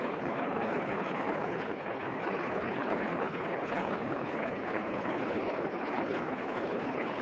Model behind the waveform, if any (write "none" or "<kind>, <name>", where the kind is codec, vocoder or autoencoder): codec, HILCodec